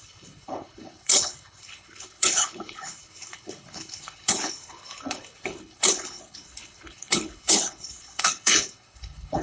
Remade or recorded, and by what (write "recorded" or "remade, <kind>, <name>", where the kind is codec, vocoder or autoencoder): remade, codec, HILCodec